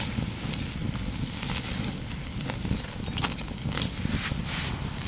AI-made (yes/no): no